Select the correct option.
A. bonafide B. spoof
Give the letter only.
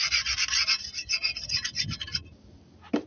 A